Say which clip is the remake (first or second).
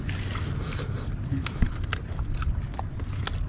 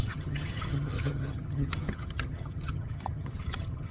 second